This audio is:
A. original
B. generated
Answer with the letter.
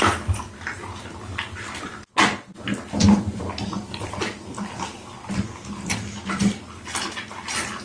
A